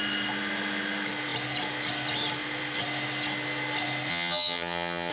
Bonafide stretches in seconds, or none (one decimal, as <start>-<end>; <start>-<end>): 0.0-4.1